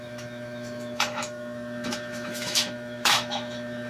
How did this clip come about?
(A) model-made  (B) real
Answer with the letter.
A